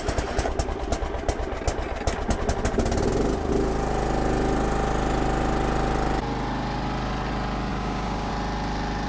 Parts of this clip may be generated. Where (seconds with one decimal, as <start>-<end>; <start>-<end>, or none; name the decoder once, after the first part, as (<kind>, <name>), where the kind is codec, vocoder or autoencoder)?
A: 7.7-8.3 (codec, DAC)